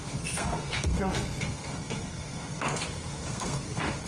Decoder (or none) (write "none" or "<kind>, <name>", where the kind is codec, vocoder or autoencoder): codec, SNAC